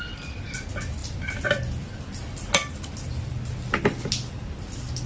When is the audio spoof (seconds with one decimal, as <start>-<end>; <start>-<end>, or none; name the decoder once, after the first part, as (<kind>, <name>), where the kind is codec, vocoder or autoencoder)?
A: none